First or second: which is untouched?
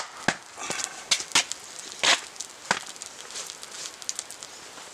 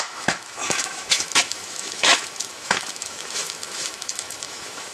first